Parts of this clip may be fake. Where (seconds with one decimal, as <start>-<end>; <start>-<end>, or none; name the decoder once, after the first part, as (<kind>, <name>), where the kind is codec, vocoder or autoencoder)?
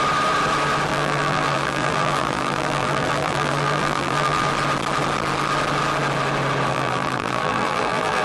0.9-4.5 (vocoder, BigVGAN v2); 6.7-8.2